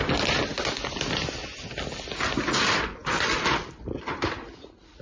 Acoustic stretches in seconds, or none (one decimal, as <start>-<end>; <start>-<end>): 0.0-5.0